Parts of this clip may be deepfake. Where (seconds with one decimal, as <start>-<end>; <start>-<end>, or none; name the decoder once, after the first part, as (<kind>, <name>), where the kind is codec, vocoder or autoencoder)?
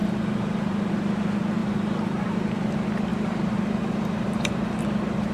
0.0-0.9 (vocoder, BigVGAN v2); 1.6-2.6; 3.1-4.8